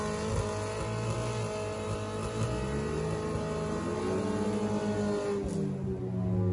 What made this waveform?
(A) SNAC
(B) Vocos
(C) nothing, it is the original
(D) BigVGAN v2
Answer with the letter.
C